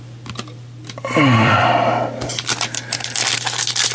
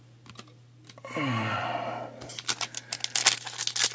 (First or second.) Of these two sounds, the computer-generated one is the first